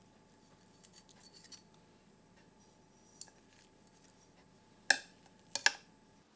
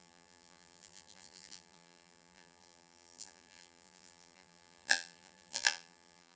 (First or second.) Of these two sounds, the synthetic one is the second